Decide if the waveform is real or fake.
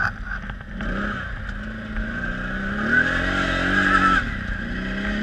real